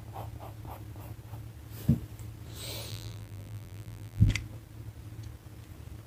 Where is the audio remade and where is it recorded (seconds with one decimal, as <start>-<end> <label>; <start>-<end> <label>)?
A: 0.0-2.9 recorded; 2.9-4.3 remade; 4.3-6.1 recorded